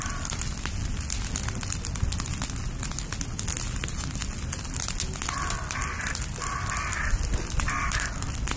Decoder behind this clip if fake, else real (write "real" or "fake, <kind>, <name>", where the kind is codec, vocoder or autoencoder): real